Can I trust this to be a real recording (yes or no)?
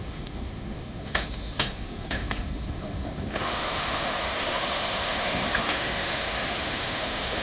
no